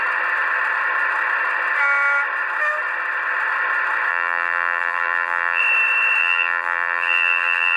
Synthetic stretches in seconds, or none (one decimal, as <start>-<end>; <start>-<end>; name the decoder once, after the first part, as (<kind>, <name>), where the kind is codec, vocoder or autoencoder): 4.1-5.6 (vocoder, BigVGAN v2); 6.2-7.8